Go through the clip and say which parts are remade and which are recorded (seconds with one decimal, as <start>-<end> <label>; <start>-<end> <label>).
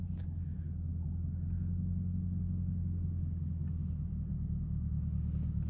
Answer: 0.0-5.7 recorded